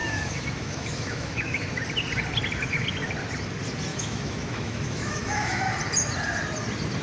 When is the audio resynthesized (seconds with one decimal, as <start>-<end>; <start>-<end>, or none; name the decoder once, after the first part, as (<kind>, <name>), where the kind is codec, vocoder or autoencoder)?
0.0-1.8 (autoencoder, DAC-VAE); 3.9-5.7